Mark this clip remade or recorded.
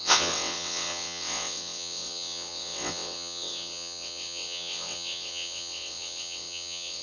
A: remade